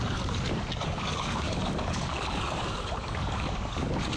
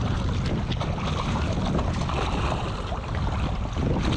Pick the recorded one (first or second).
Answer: second